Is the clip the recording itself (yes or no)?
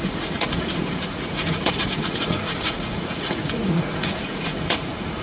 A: no